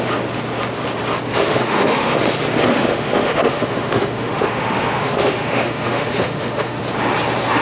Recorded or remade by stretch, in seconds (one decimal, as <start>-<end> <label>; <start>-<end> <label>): 0.0-1.3 recorded; 1.3-2.2 remade; 2.2-2.7 recorded; 2.7-6.8 remade; 6.8-7.6 recorded